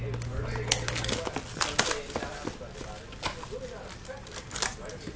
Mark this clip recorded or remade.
recorded